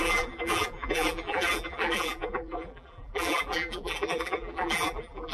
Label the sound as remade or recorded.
remade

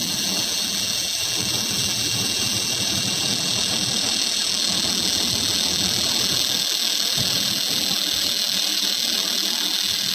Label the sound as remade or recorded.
remade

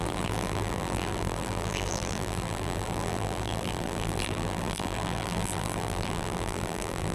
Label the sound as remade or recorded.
remade